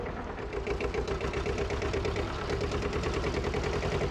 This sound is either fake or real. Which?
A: real